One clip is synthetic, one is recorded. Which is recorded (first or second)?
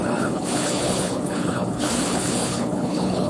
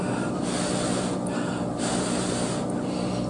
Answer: second